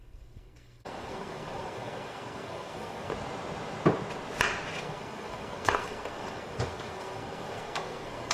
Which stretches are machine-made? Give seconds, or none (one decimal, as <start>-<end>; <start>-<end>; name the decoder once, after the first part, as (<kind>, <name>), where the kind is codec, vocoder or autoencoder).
0.0-3.1 (codec, SNAC); 4.8-8.3